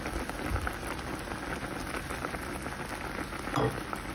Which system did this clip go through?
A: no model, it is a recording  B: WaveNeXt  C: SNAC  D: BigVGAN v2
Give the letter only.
A